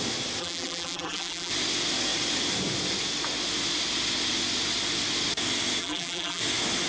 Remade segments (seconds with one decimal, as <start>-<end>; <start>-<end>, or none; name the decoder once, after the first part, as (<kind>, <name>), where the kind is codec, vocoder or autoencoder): 0.4-1.5 (vocoder, BigVGAN v2); 5.8-6.4